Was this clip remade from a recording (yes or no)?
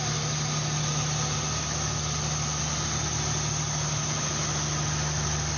no